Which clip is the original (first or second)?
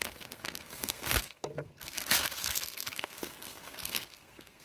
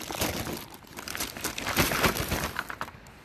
second